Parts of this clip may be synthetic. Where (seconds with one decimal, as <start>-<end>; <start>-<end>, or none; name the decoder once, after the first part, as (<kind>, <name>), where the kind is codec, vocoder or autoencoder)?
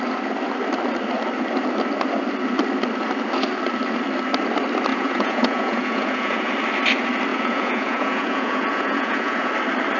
4.9-6.5 (vocoder, Vocos); 7.3-9.5